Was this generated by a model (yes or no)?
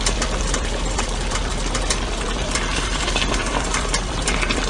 yes